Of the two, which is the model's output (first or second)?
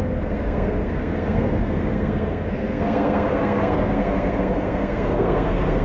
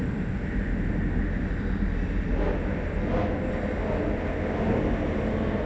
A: first